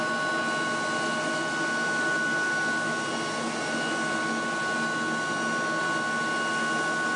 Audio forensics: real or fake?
real